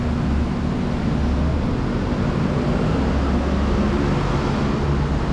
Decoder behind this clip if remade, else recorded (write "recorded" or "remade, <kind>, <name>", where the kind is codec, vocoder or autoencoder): recorded